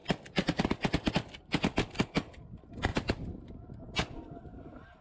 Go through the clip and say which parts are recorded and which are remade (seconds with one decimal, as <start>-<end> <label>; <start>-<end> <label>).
0.0-5.0 recorded